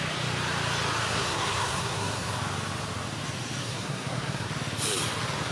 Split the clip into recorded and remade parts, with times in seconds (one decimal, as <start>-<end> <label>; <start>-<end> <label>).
0.0-1.0 recorded; 1.0-2.4 remade; 2.4-3.6 recorded; 3.6-4.5 remade; 4.5-5.5 recorded